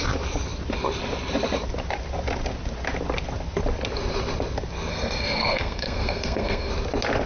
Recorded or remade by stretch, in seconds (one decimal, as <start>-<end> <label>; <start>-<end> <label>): 0.0-4.9 recorded; 4.9-6.7 remade; 6.7-7.3 recorded